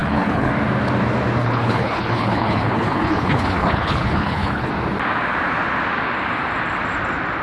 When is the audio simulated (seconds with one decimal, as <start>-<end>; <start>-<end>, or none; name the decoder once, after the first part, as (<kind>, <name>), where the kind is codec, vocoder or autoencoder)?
0.0-0.5 (codec, HILCodec); 1.4-4.7